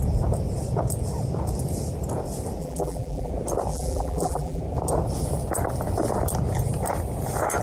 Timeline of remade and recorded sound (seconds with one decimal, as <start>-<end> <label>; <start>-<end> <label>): 0.0-2.6 recorded; 2.6-3.3 remade; 3.3-3.7 recorded; 3.7-4.6 remade; 4.6-7.6 recorded